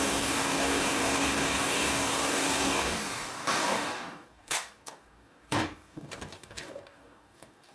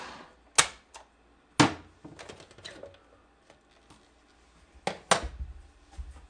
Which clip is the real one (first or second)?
second